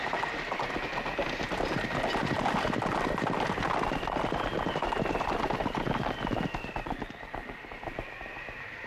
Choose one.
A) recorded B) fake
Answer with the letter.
A